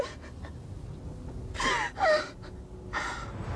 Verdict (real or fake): real